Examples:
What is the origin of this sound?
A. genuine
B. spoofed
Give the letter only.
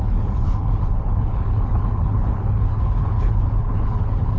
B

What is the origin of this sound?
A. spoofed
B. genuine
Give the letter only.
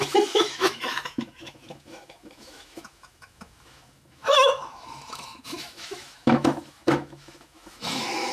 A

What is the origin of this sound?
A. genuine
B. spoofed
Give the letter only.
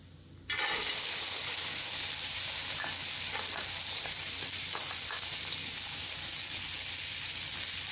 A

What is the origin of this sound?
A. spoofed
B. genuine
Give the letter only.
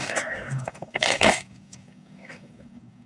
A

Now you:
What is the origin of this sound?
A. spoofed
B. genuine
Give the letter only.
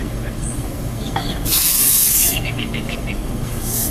A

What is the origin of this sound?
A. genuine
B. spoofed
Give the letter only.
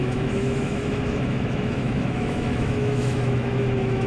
B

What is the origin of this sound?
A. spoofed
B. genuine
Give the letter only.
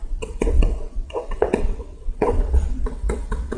A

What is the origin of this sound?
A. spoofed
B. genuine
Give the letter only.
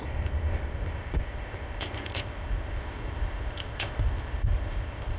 A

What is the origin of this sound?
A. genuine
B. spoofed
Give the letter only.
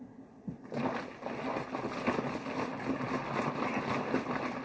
A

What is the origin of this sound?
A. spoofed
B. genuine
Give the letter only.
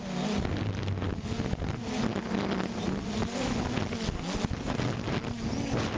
B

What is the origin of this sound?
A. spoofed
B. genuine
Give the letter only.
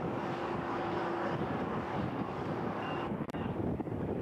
A